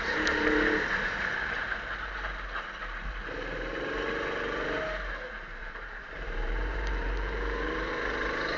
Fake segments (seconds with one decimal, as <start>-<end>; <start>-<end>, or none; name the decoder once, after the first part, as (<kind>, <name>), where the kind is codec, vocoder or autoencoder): 5.6-7.9 (vocoder, BigVGAN v2)